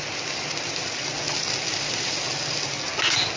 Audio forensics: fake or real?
real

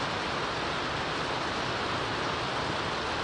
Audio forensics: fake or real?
real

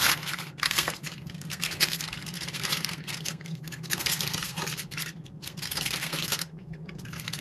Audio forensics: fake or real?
fake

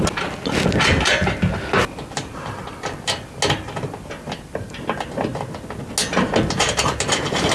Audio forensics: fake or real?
real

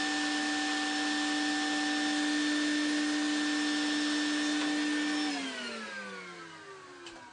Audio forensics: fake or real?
real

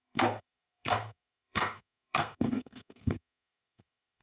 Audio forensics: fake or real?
fake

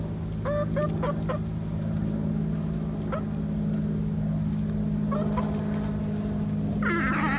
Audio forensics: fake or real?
real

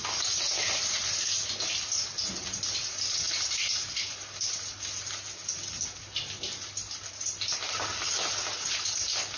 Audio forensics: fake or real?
real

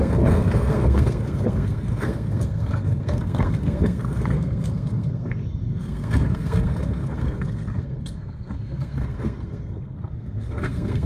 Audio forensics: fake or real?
fake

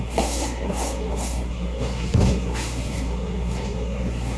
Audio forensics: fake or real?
fake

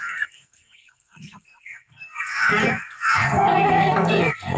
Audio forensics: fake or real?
fake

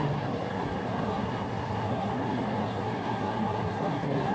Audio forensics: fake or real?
fake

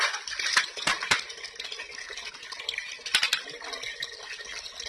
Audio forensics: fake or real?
real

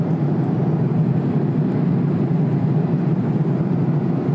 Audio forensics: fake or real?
real